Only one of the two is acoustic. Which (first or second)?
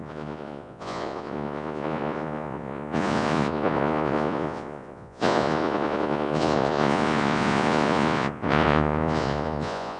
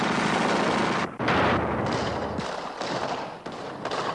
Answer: second